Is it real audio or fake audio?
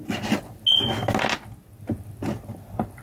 real